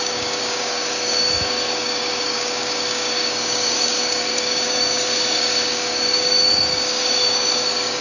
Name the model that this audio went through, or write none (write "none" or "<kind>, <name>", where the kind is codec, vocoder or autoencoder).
codec, DAC